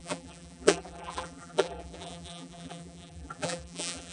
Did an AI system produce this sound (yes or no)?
yes